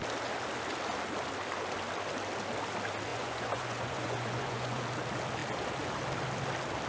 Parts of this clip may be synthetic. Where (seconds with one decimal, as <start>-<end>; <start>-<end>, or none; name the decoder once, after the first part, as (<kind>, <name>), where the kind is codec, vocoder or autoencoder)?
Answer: 3.1-4.8 (vocoder, Vocos)